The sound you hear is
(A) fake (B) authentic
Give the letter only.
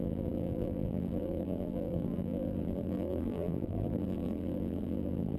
A